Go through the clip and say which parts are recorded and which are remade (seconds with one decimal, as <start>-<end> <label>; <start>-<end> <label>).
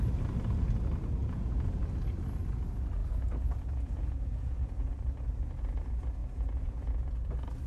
0.0-1.2 recorded; 1.2-1.8 remade; 1.8-3.0 recorded; 3.0-4.9 remade; 4.9-6.2 recorded; 6.2-7.3 remade; 7.3-7.7 recorded